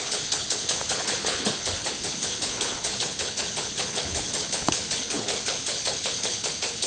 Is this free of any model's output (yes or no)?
no